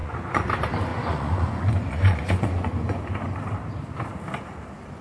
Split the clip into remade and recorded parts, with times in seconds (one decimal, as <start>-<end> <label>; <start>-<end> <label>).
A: 0.0-0.5 remade; 0.5-0.9 recorded; 0.9-3.0 remade; 3.0-5.0 recorded